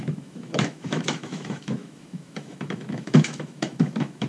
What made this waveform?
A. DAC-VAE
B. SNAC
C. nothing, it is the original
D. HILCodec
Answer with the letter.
A